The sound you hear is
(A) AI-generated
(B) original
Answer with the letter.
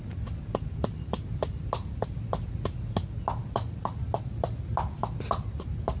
B